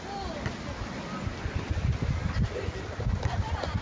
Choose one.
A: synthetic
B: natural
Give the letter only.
B